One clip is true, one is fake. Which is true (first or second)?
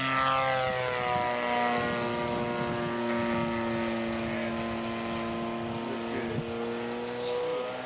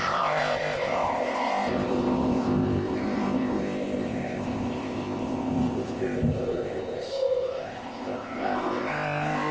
first